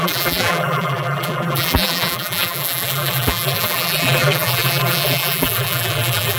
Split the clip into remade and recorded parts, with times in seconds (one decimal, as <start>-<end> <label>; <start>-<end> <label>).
0.0-6.4 remade